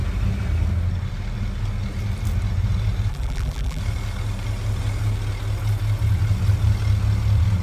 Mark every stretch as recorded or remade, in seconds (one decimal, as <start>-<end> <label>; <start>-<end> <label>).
0.0-3.1 recorded; 3.1-3.8 remade; 3.8-7.6 recorded